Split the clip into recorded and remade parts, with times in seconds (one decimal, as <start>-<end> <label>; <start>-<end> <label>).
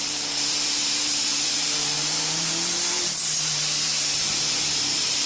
0.0-5.3 remade